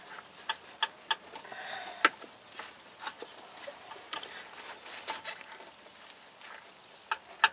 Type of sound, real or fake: real